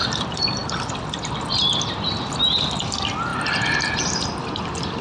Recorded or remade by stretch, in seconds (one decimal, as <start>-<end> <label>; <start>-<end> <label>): 0.0-5.0 recorded